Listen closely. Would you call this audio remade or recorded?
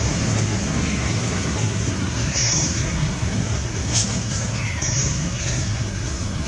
remade